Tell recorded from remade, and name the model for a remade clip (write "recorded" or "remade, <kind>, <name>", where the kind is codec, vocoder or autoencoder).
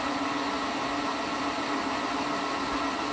recorded